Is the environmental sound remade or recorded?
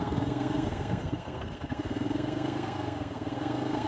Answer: remade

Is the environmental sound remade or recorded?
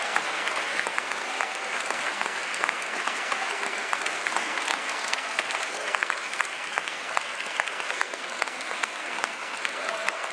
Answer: remade